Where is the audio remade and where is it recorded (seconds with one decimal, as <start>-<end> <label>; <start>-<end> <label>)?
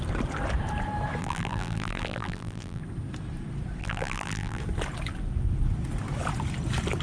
0.0-1.2 recorded; 1.2-2.8 remade; 2.8-3.8 recorded; 3.8-4.6 remade; 4.6-7.0 recorded